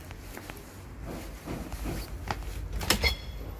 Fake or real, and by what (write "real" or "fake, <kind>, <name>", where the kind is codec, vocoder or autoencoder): real